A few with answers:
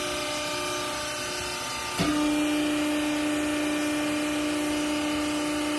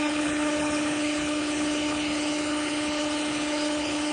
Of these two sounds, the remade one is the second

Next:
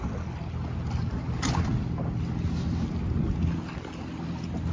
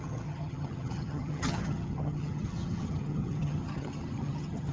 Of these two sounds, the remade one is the second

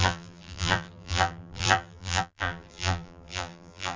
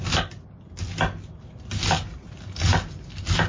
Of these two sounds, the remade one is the first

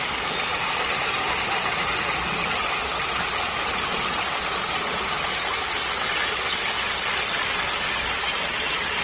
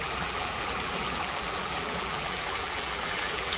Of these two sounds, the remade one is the second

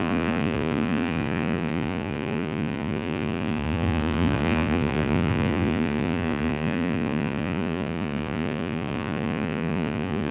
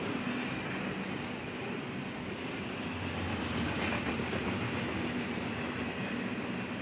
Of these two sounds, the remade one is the first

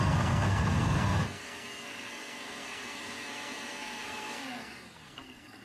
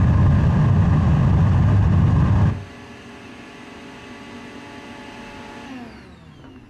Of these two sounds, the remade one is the first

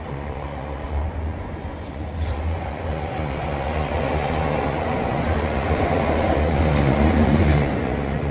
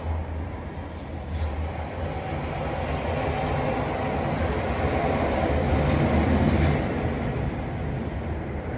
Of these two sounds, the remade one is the first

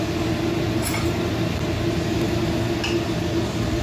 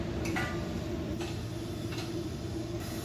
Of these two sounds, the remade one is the second